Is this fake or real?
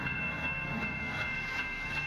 fake